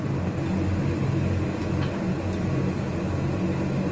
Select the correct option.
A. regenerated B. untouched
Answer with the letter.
B